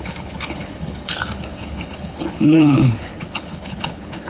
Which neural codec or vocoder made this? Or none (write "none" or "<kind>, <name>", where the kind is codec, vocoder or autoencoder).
codec, HILCodec